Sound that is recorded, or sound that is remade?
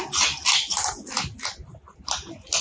recorded